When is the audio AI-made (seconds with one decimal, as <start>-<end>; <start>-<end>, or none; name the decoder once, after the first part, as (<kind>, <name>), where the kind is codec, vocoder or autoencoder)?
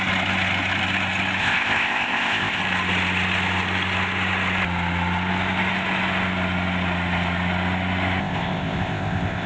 1.4-2.6 (codec, ZipCodec); 8.2-9.5